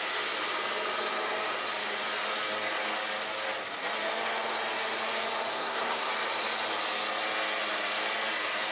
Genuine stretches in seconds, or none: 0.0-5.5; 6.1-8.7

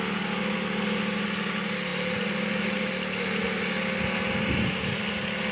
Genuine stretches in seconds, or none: 0.0-1.9; 2.9-5.5

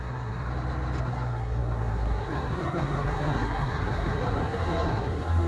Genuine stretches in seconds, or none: 0.5-1.0

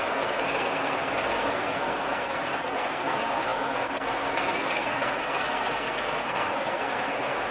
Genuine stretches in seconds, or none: none

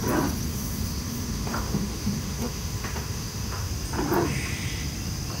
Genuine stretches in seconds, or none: 0.0-0.5; 3.7-5.4